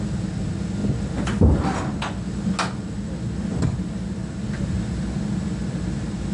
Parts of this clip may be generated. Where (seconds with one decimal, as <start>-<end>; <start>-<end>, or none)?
none